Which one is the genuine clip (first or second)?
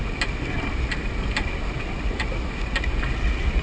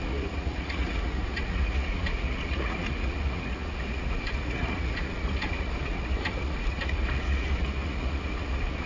first